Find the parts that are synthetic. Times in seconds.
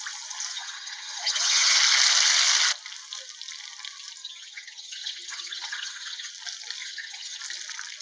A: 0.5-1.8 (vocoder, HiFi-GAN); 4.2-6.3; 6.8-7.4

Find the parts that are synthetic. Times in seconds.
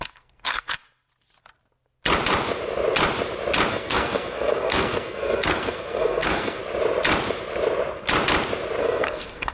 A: 0.0-0.8 (codec, SNAC); 3.7-6.6; 8.8-9.5